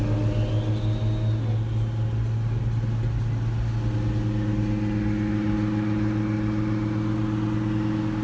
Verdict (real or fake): real